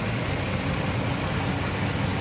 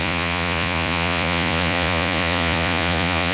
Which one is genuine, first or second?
first